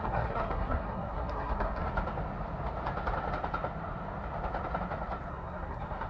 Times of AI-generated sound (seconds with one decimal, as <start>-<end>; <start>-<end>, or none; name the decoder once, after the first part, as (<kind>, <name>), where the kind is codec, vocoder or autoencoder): 0.0-1.9 (codec, SNAC); 5.3-6.1